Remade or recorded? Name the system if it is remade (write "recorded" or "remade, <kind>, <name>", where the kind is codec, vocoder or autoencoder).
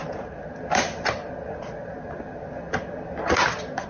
recorded